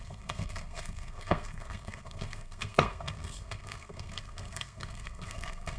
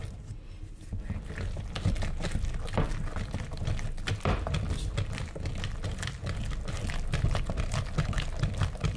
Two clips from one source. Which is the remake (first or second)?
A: first